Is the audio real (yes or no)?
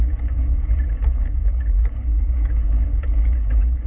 no